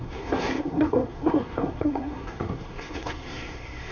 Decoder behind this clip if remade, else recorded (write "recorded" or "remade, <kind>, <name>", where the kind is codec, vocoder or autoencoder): remade, codec, SNAC